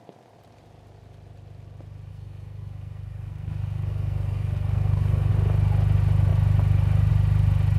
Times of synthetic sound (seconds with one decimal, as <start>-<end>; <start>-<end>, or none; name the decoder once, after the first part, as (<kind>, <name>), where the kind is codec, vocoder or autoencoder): 2.1-5.3 (codec, SNAC)